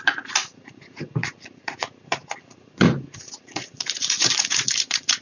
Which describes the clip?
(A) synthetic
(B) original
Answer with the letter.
A